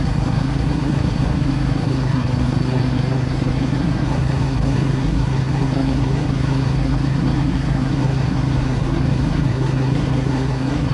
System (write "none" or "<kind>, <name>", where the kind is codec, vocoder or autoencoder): codec, SNAC